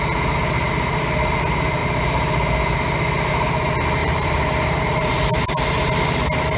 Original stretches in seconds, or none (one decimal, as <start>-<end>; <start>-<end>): 0.0-4.0; 5.1-6.6